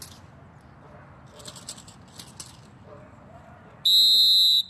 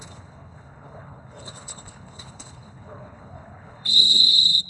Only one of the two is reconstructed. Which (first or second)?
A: second